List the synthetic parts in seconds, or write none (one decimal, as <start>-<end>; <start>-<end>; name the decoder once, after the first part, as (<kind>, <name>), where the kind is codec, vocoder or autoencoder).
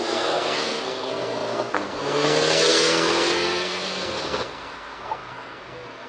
0.0-6.1 (codec, SNAC)